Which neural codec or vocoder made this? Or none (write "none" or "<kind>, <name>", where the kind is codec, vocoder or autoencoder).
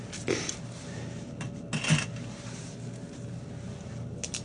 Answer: none